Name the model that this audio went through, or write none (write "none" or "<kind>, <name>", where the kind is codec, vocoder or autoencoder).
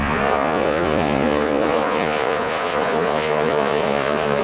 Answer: vocoder, Vocos